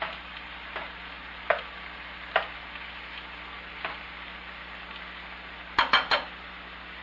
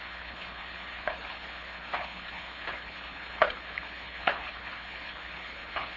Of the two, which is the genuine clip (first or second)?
first